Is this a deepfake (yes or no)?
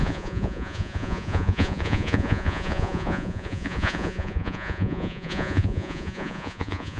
yes